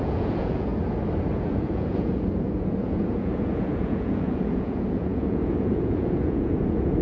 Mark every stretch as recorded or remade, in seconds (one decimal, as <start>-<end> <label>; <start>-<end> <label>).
0.0-0.7 remade; 0.7-1.4 recorded; 1.4-7.0 remade